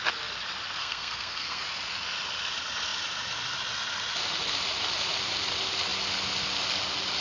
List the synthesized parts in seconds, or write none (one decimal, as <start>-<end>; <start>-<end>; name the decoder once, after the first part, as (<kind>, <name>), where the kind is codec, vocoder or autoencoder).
0.8-1.6 (codec, SNAC)

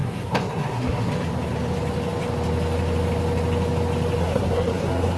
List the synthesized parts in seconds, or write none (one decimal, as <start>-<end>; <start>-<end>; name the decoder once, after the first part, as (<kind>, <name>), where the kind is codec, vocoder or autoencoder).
0.0-1.1 (codec, SNAC); 4.2-5.2

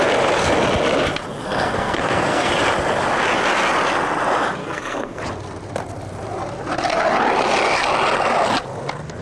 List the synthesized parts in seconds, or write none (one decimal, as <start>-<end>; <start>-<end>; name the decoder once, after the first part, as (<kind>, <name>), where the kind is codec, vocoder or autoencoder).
1.4-2.5 (codec, SNAC); 4.6-5.2

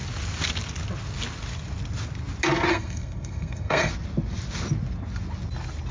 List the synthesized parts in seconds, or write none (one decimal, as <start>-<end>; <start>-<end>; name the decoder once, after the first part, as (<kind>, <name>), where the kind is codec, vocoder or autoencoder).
2.7-3.9 (codec, SNAC)

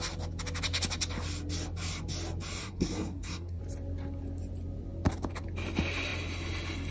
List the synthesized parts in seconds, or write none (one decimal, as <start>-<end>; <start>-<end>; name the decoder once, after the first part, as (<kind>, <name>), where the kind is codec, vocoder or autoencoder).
2.6-3.6 (codec, SNAC)

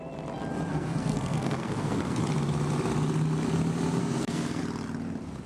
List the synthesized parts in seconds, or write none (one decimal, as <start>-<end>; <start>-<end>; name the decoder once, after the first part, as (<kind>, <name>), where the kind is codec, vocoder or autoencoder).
0.7-2.2 (codec, SNAC); 4.0-4.6

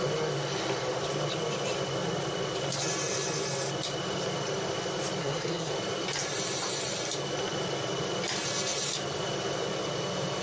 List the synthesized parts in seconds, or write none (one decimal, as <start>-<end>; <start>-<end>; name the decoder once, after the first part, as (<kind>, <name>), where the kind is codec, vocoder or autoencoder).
5.2-5.7 (codec, SNAC)